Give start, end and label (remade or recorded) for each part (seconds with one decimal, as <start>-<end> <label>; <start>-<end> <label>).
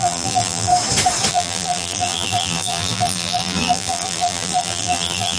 0.0-0.7 remade; 0.7-1.3 recorded; 1.3-5.4 remade